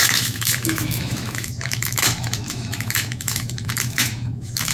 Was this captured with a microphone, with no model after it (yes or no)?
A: no